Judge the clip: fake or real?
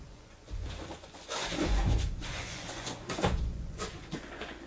fake